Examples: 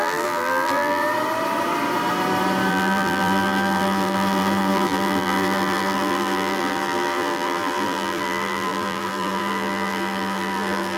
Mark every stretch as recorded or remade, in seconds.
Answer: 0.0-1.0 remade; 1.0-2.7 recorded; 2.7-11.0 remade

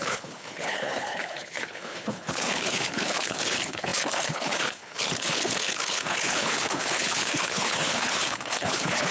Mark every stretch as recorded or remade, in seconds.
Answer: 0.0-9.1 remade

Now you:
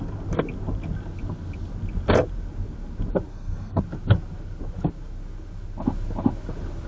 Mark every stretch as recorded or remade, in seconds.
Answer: 0.0-3.3 recorded; 3.3-3.8 remade; 3.8-6.9 recorded

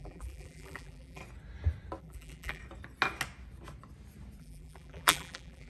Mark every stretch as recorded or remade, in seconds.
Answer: 0.0-1.2 remade; 1.2-2.0 recorded; 2.0-2.6 remade; 2.6-4.4 recorded; 4.4-5.7 remade

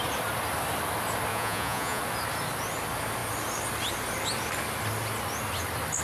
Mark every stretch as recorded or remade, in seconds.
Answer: 0.0-1.3 recorded; 1.3-2.0 remade; 2.0-6.0 recorded

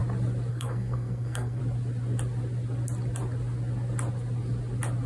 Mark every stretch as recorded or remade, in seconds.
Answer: 0.0-0.5 recorded; 0.5-1.6 remade; 1.6-5.1 recorded

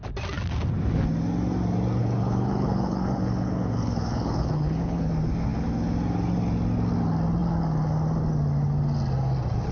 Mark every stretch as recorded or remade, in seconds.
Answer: 0.0-2.0 recorded; 2.0-5.1 remade; 5.1-9.7 recorded